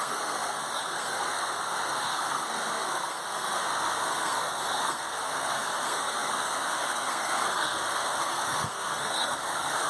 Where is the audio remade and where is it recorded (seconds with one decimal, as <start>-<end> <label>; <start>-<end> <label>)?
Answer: 0.0-9.9 remade